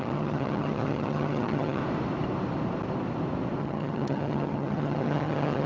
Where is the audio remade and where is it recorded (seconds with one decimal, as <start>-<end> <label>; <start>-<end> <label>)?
0.0-1.8 remade; 1.8-3.6 recorded; 3.6-5.7 remade

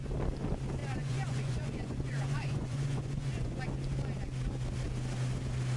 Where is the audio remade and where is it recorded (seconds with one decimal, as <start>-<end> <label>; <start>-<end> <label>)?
0.0-0.8 recorded; 0.8-3.6 remade; 3.6-5.8 recorded

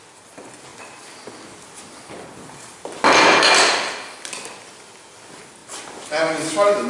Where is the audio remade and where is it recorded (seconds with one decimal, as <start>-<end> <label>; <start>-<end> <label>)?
0.0-6.9 recorded